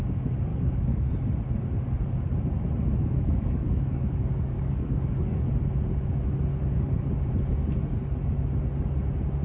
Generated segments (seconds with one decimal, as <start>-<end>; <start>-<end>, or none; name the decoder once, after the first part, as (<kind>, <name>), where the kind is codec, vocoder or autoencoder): 0.5-1.1 (codec, DAC); 3.0-5.5; 6.5-7.1

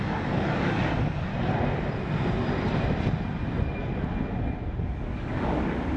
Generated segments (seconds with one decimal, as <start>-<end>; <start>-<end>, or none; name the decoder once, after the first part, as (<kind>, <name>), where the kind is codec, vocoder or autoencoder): 0.0-1.3 (codec, DAC); 4.8-6.0

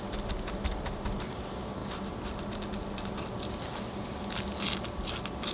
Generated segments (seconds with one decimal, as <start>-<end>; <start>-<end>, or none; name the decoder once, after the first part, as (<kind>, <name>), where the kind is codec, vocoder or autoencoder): none